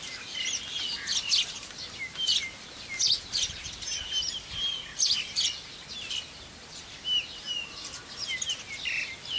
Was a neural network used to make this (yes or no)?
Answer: no